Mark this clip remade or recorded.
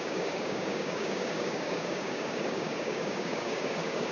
remade